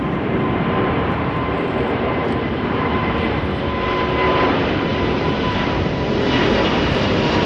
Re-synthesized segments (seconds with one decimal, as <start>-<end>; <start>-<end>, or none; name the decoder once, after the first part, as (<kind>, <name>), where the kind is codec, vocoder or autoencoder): 0.0-7.5 (vocoder, BigVGAN v2)